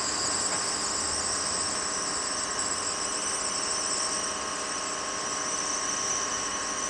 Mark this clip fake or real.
real